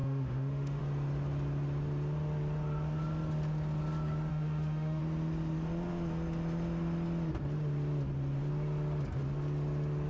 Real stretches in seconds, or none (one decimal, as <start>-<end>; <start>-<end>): 0.8-4.3; 5.0-10.1